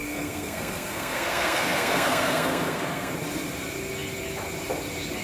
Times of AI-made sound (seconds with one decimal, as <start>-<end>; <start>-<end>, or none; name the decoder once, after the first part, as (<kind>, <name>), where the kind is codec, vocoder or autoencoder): 0.0-3.1 (codec, SNAC)